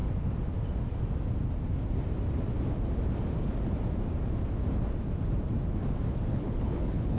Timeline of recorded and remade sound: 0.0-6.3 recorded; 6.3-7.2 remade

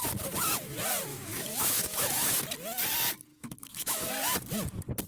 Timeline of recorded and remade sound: 0.0-1.1 recorded; 1.1-2.4 remade; 2.4-3.3 recorded; 3.3-4.1 remade; 4.1-5.1 recorded

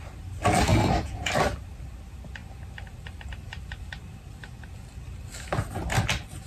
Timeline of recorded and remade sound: 0.0-0.7 recorded; 0.7-1.3 remade; 1.3-6.5 recorded

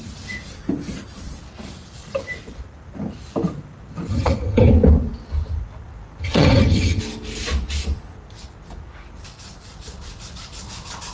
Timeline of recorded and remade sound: 0.0-4.1 recorded; 4.1-4.7 remade; 4.7-6.2 recorded; 6.2-7.0 remade; 7.0-11.1 recorded